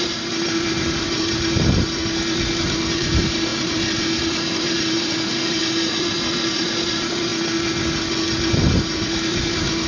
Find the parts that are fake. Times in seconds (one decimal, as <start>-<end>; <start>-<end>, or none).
0.0-2.0; 2.6-7.3; 8.5-9.9